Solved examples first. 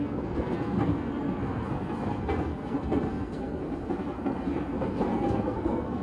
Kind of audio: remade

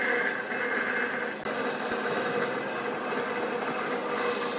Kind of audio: recorded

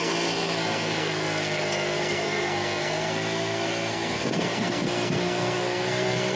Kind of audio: remade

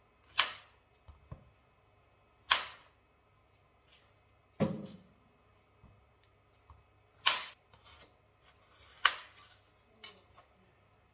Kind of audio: recorded